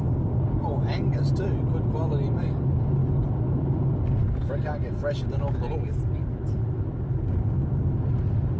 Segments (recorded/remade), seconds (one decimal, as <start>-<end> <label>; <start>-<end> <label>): 0.0-8.6 recorded